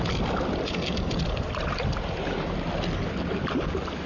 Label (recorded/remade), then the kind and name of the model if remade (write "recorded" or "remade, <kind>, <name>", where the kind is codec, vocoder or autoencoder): recorded